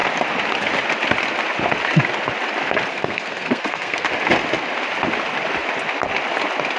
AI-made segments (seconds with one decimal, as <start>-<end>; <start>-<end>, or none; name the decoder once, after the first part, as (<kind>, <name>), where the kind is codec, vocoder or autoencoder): 2.9-4.1 (codec, SNAC)